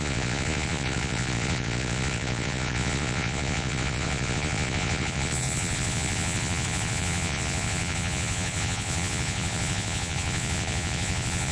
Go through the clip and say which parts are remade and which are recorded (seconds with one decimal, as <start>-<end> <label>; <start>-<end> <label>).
0.0-11.5 remade